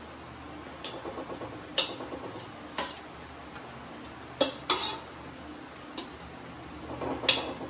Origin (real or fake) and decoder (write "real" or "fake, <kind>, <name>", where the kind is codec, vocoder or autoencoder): real